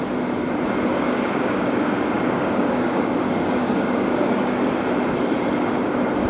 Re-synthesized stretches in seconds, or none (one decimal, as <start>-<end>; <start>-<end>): 0.9-4.7